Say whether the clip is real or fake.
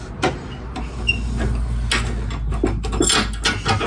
real